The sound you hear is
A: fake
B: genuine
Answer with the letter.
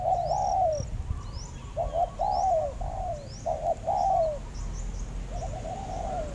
B